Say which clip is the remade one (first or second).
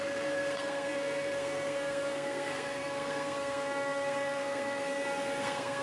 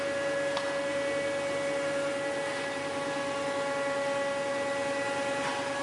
first